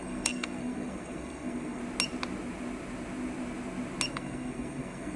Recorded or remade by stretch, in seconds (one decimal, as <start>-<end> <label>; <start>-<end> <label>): 0.0-1.8 remade; 1.8-4.1 recorded; 4.1-5.2 remade

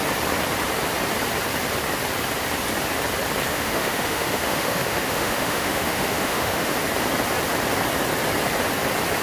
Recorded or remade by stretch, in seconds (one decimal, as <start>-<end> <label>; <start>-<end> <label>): 0.0-3.5 recorded; 3.5-6.7 remade; 6.7-9.2 recorded

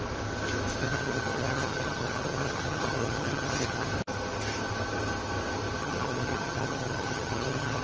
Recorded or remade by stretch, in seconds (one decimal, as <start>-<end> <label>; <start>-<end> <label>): 0.0-0.8 recorded; 0.8-3.9 remade; 3.9-5.8 recorded; 5.8-7.8 remade

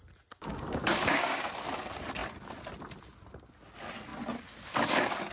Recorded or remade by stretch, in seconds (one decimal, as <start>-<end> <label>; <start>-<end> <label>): 0.0-0.5 recorded; 0.5-1.5 remade; 1.5-5.3 recorded